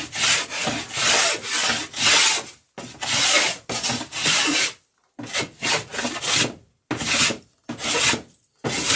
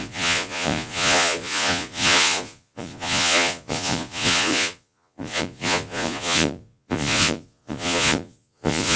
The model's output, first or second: second